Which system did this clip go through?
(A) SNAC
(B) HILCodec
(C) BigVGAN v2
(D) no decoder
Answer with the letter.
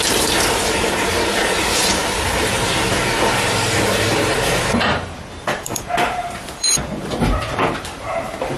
C